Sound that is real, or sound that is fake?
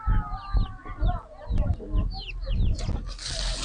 real